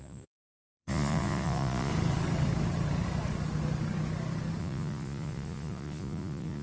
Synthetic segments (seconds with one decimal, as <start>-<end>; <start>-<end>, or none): 0.0-1.9; 4.6-6.6